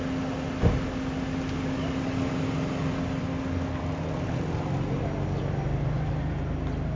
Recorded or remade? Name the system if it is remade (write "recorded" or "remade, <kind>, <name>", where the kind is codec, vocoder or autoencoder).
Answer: recorded